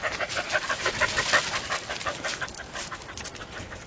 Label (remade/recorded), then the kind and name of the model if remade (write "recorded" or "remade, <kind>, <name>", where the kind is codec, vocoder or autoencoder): recorded